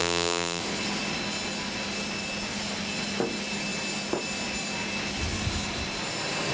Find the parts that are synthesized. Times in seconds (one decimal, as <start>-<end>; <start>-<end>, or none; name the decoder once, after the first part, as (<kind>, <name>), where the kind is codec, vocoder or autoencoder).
0.0-0.6 (vocoder, BigVGAN v2)